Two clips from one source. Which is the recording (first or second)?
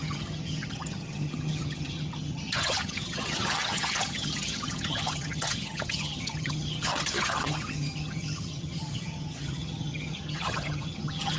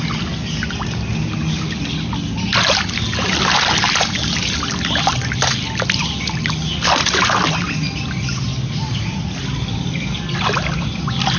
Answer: second